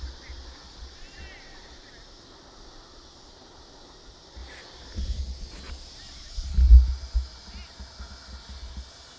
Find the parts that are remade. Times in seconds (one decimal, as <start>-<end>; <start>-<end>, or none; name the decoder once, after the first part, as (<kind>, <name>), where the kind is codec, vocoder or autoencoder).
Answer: 4.4-5.2 (vocoder, BigVGAN v2)